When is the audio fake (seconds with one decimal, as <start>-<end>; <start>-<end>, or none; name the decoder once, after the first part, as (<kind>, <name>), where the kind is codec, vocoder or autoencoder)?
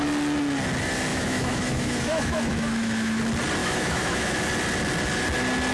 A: 1.1-3.2 (autoencoder, DAC-VAE); 3.6-4.4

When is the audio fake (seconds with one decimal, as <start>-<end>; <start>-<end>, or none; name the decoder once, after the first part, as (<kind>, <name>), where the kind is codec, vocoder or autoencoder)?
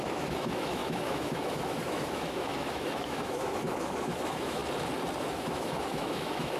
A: 0.0-4.6 (autoencoder, DAC-VAE); 5.3-6.6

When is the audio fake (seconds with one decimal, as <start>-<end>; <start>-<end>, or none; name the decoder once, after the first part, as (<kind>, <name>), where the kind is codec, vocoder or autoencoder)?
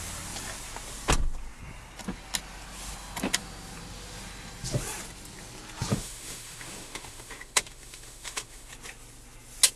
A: 5.9-8.7 (autoencoder, DAC-VAE)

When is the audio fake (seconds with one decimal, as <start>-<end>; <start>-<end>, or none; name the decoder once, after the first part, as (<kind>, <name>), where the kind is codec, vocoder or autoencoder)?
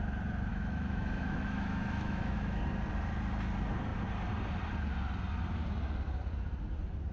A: 0.5-2.6 (autoencoder, DAC-VAE)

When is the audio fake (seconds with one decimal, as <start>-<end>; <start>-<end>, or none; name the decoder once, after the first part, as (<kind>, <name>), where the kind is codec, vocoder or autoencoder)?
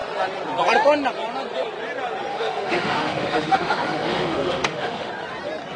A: 2.3-5.1 (autoencoder, DAC-VAE)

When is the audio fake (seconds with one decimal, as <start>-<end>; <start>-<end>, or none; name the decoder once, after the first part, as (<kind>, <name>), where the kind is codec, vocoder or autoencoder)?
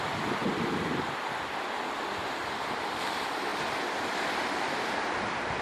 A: none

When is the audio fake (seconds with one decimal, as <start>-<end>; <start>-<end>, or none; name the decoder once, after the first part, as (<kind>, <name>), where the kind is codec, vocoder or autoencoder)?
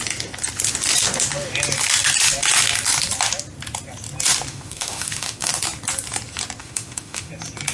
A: 4.5-5.5 (autoencoder, DAC-VAE); 6.6-7.3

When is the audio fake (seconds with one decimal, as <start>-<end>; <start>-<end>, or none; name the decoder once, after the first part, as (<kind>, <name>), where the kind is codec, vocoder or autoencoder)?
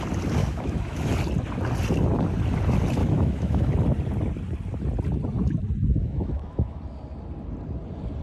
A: 0.4-1.1 (autoencoder, DAC-VAE); 3.0-3.6; 6.0-6.8